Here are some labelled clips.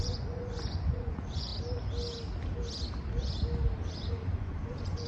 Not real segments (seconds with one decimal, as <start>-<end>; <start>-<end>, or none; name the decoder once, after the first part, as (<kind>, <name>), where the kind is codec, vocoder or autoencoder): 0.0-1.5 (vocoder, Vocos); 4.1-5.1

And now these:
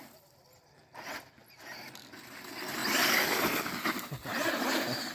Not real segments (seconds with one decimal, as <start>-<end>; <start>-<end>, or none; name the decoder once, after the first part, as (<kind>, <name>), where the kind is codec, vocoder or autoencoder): none

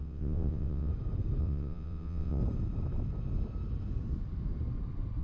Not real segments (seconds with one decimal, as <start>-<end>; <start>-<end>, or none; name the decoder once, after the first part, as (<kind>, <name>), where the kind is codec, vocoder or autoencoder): 0.0-0.9 (vocoder, WaveNeXt); 1.4-2.4

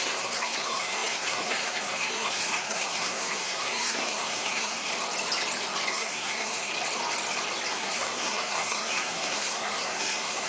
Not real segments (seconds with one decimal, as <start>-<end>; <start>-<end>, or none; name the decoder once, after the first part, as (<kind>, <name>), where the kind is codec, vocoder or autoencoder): 0.0-4.9 (codec, SNAC); 5.9-6.7; 7.7-10.5